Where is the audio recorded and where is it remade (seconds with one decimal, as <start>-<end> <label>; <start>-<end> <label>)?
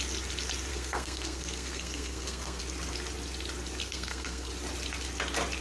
0.0-0.7 recorded; 0.7-2.6 remade; 2.6-3.8 recorded; 3.8-4.5 remade; 4.5-5.6 recorded